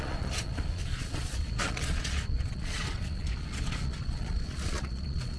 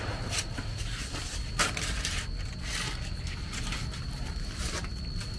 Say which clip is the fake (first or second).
first